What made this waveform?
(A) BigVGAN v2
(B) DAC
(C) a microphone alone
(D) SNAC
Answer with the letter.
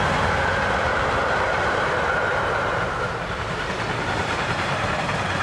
A